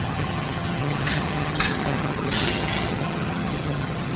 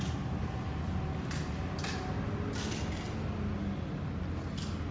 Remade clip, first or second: first